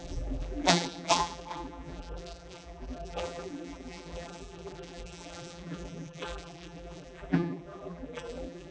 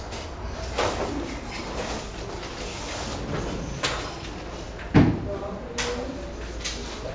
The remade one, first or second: first